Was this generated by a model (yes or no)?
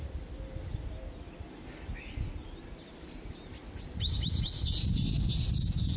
no